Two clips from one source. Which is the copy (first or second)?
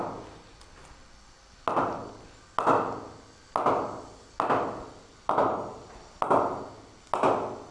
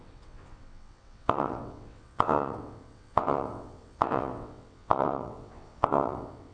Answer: second